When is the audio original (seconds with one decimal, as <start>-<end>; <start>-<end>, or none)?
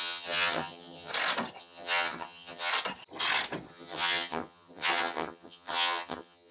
1.1-1.6; 2.7-3.7